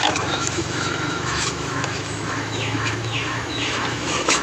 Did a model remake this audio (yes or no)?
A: yes